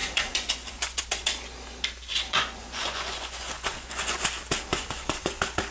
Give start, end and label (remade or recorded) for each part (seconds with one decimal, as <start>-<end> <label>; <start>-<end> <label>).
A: 0.0-1.0 remade; 1.0-2.1 recorded; 2.1-4.2 remade; 4.2-4.7 recorded; 4.7-5.3 remade; 5.3-5.7 recorded